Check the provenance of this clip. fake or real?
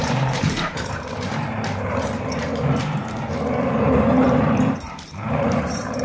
fake